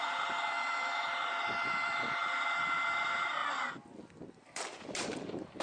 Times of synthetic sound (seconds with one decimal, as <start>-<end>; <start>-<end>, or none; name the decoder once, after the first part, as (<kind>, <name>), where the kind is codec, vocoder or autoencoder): 0.0-3.4 (vocoder, BigVGAN v2); 4.4-5.6